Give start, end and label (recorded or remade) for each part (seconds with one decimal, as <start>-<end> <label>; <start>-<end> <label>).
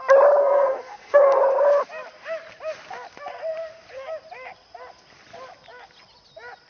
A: 0.0-0.4 recorded; 0.4-1.4 remade; 1.4-6.7 recorded